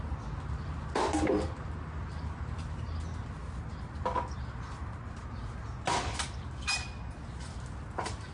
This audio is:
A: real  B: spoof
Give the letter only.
A